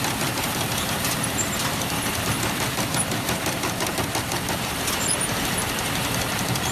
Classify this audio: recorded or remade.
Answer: remade